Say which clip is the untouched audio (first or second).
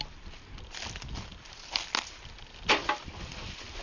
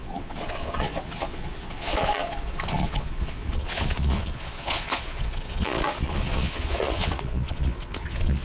first